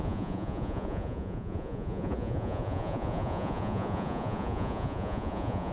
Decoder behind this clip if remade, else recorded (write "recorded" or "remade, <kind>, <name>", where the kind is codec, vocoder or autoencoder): remade, vocoder, Vocos